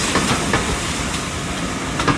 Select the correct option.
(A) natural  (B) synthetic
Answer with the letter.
A